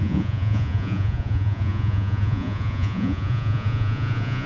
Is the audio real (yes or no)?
no